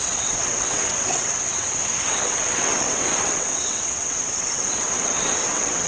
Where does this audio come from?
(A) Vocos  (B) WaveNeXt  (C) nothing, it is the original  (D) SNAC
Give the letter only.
B